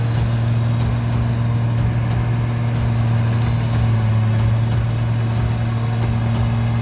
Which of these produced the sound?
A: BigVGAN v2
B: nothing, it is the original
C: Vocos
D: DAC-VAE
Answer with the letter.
B